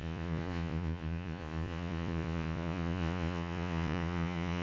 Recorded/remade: remade